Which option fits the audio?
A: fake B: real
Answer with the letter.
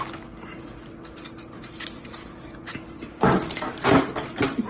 B